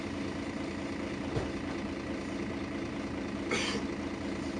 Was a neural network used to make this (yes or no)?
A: no